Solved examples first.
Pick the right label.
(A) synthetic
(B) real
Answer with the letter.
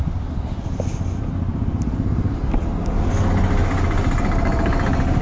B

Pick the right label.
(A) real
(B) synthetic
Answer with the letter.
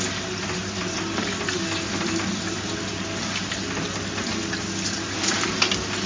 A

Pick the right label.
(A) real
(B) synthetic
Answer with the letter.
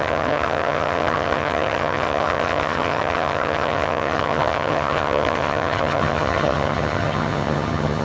B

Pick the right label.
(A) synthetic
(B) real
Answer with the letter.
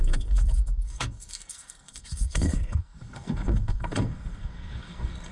A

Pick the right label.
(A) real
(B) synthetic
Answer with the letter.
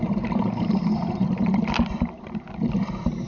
A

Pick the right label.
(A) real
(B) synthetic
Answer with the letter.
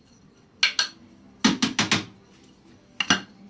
A